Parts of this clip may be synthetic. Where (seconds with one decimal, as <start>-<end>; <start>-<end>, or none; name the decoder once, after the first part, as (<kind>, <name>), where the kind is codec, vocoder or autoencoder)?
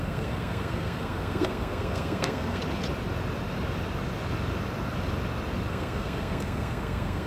0.0-2.6 (codec, SNAC); 5.7-7.3